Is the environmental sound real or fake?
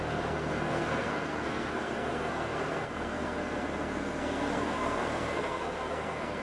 fake